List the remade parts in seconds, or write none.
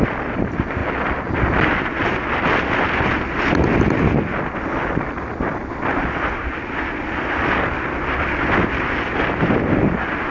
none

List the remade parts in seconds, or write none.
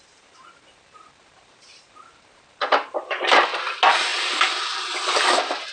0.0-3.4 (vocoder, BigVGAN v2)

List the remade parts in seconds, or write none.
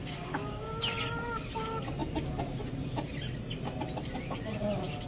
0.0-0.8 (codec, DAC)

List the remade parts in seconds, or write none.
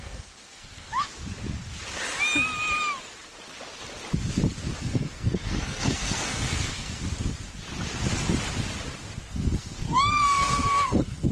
0.0-0.9 (codec, SNAC); 4.8-7.0; 9.3-11.3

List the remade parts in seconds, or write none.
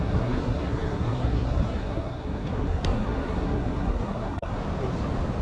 0.0-4.6 (codec, SNAC)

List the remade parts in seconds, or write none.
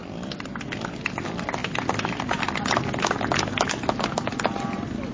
none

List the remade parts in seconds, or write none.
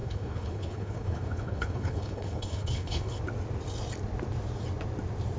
0.0-3.2 (codec, HILCodec)